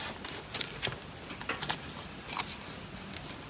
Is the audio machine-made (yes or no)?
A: no